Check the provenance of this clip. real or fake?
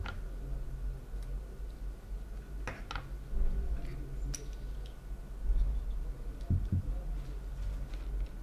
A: real